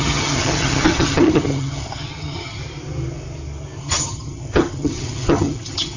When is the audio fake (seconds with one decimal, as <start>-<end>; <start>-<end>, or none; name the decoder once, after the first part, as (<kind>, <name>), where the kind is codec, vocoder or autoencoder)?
0.0-2.6 (vocoder, HiFi-GAN); 3.8-6.0